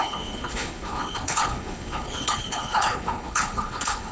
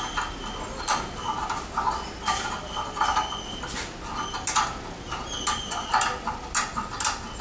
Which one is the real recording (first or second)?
second